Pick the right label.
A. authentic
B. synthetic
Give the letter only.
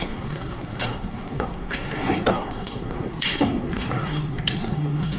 B